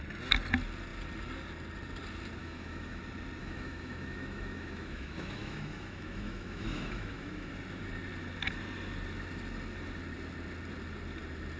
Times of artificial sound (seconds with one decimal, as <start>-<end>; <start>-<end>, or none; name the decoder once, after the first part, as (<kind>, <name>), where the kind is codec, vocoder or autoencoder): 2.4-3.0 (autoencoder, DAC-VAE); 3.4-7.5